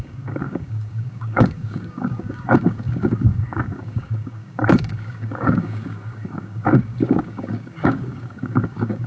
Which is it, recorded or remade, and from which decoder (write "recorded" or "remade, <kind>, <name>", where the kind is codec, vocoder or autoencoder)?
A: remade, codec, DAC